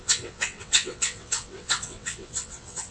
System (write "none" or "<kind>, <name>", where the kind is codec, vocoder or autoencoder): vocoder, WaveNeXt